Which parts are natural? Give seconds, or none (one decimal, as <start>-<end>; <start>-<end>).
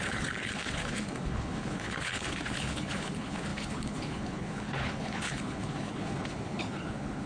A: none